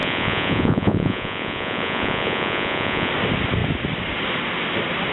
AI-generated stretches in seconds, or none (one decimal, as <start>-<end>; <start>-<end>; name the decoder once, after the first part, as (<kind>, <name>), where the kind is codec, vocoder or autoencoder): 0.0-3.1 (vocoder, Vocos)